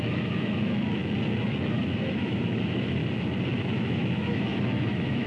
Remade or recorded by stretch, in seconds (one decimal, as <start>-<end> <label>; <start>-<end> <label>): 0.0-1.0 remade; 1.0-1.7 recorded; 1.7-3.0 remade; 3.0-3.6 recorded; 3.6-5.3 remade